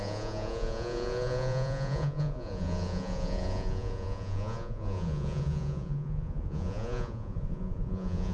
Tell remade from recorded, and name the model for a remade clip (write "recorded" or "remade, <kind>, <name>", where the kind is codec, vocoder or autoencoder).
remade, vocoder, Vocos